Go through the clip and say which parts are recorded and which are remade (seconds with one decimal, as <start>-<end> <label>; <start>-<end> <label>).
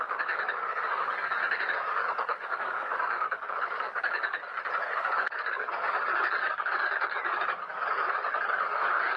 0.0-4.4 remade; 4.4-4.9 recorded; 4.9-9.2 remade